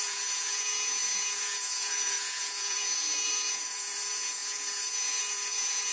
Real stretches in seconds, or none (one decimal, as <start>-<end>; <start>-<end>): none